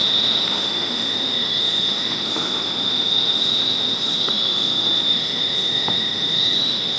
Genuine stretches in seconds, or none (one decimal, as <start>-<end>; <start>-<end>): none

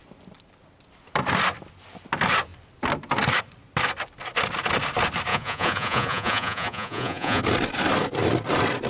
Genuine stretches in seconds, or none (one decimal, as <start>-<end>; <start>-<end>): 0.0-5.3; 7.4-8.9